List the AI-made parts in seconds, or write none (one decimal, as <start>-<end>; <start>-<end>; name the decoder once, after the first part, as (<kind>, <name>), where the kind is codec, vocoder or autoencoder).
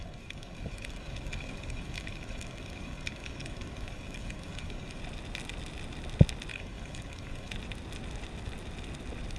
0.0-5.0 (codec, DAC); 6.5-7.5